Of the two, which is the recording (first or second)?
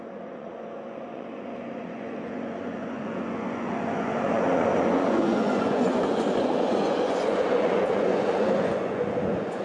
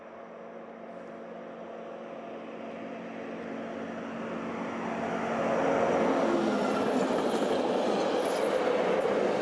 second